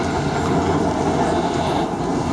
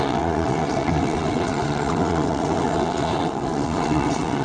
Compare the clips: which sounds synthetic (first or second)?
second